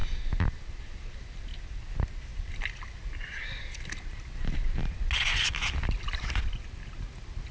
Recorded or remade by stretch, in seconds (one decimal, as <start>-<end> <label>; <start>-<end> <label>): 0.0-7.5 recorded